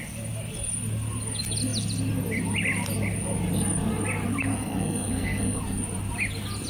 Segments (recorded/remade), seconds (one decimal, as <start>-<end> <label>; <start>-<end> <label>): 0.0-4.5 recorded; 4.5-5.6 remade; 5.6-6.7 recorded